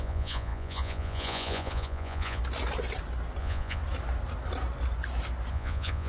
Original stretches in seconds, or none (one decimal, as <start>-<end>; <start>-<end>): 2.4-3.4; 3.8-5.5